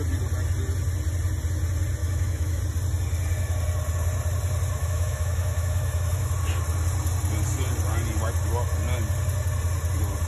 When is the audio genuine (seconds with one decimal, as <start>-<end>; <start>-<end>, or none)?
0.0-2.0; 2.6-4.8; 6.3-10.3